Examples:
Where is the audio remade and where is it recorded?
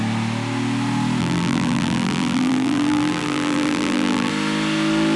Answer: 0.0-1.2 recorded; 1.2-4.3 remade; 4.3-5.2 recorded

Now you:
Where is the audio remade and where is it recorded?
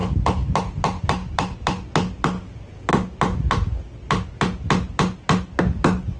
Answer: 0.0-6.2 recorded